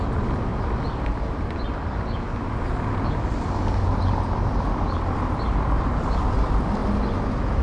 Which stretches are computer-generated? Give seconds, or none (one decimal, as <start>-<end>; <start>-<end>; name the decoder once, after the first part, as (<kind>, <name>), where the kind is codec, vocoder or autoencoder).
none